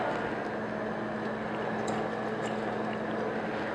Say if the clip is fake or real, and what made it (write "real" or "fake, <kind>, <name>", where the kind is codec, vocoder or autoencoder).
real